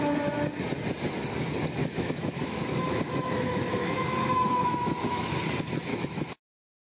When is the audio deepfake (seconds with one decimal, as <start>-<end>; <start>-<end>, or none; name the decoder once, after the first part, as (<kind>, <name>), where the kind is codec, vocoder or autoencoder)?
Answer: 1.8-5.3 (autoencoder, DAC-VAE); 5.9-6.5